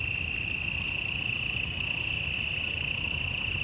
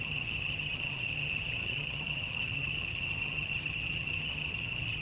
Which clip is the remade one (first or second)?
second